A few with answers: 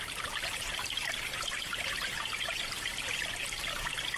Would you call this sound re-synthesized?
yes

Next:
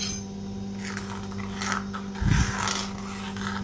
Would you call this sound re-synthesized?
no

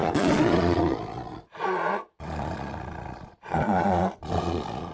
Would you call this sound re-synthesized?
yes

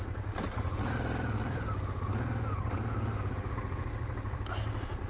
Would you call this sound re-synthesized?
no